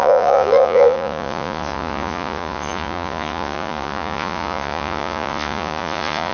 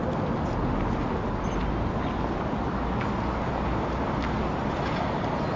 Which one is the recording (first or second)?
second